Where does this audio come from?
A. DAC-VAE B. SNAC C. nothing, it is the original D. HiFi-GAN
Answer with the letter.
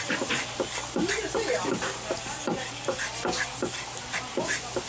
C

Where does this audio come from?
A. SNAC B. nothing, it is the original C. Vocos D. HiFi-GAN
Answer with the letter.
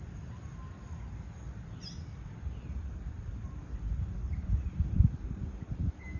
B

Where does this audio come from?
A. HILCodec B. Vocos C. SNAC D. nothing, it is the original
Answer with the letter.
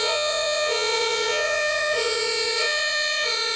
B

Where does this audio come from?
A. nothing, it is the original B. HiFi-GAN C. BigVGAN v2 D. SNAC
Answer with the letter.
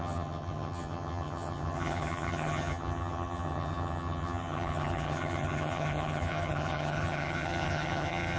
B